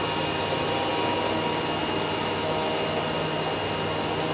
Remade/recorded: recorded